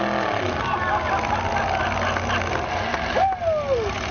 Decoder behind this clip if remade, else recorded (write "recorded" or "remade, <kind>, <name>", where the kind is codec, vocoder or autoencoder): recorded